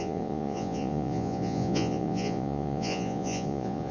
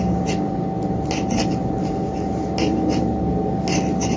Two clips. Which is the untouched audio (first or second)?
second